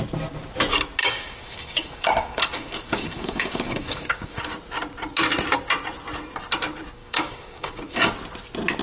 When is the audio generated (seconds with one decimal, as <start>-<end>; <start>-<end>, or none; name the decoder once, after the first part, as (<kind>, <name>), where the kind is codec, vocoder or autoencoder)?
1.0-4.4 (codec, DAC); 7.0-8.1